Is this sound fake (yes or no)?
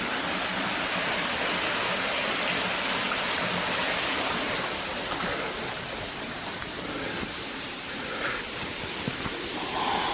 no